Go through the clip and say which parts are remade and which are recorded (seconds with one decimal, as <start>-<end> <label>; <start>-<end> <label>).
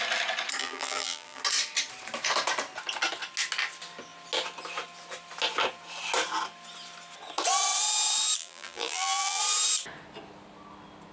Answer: 0.0-0.6 recorded; 0.6-1.4 remade; 1.4-8.4 recorded; 8.4-9.4 remade; 9.4-11.1 recorded